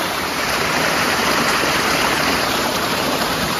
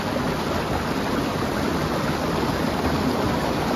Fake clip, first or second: first